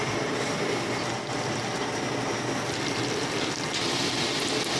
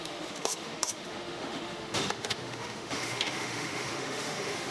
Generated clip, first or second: second